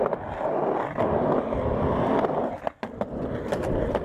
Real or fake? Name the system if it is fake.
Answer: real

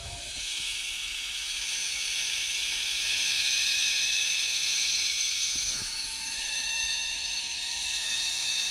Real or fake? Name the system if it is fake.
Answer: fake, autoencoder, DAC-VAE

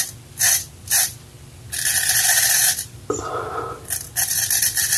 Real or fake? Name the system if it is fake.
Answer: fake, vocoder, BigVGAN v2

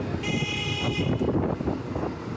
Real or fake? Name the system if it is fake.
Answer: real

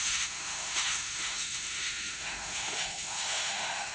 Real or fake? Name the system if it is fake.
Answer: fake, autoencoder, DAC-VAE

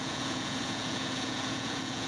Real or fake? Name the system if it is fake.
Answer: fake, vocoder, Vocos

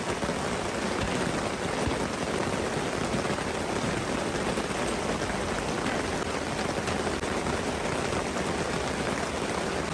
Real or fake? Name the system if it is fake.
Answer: real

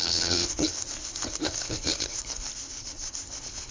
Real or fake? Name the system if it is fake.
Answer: fake, codec, HILCodec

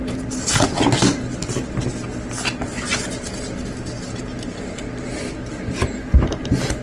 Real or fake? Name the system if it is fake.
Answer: real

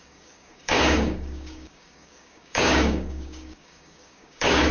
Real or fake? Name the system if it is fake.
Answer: fake, codec, DAC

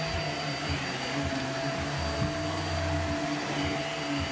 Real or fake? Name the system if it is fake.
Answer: real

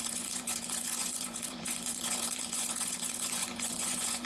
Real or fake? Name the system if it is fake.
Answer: fake, vocoder, Vocos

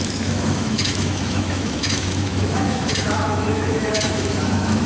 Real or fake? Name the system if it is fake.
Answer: fake, autoencoder, DAC-VAE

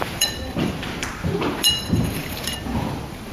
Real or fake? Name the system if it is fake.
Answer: fake, vocoder, BigVGAN v2